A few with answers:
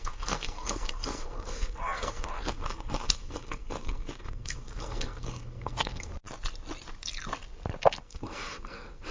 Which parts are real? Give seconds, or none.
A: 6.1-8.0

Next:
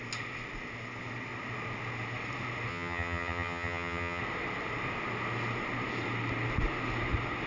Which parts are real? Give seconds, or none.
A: 0.0-2.7; 4.2-7.5

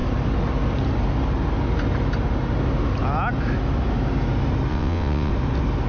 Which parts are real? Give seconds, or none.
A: 0.0-4.7; 5.3-5.9

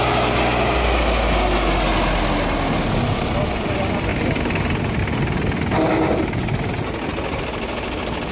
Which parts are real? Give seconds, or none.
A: 0.0-8.3

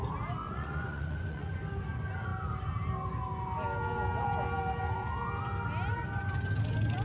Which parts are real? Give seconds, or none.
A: 0.0-0.4; 1.5-7.0

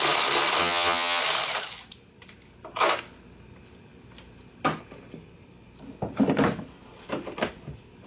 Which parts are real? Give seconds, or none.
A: 0.0-0.6; 1.2-8.1

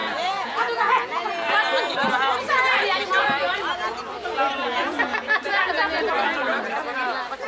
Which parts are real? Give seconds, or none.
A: 1.3-7.5

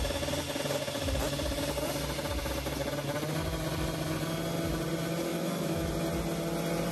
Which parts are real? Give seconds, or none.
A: 0.0-5.3; 5.9-6.9